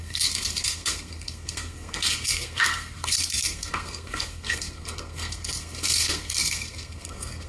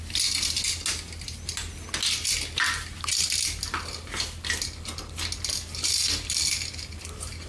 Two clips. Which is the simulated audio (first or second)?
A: first